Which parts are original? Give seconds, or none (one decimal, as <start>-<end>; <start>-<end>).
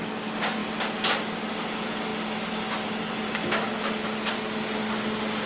0.0-5.5